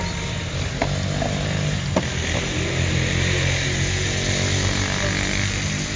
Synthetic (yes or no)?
no